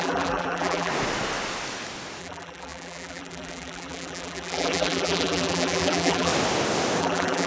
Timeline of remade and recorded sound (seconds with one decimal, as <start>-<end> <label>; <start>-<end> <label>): 0.0-0.9 remade; 0.9-2.2 recorded; 2.2-6.3 remade; 6.3-7.0 recorded; 7.0-7.5 remade